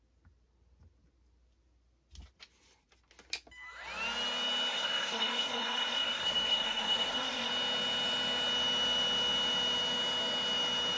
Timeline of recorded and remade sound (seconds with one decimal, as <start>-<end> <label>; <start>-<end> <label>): 0.0-4.7 recorded; 4.7-7.5 remade; 7.5-11.0 recorded